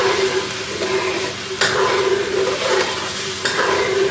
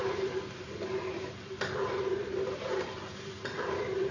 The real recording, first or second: first